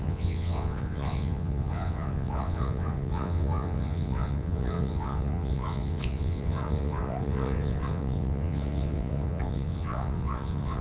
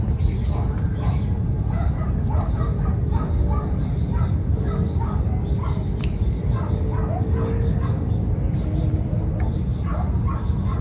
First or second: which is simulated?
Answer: first